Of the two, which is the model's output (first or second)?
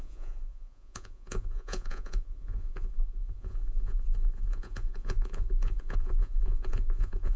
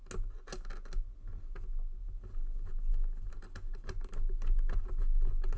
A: first